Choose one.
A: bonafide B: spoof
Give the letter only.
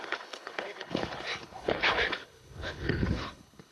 B